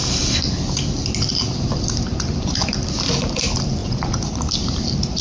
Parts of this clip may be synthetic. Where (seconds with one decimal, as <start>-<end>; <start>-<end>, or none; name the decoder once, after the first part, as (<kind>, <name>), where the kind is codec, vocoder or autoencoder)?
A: 3.8-4.4 (vocoder, Vocos)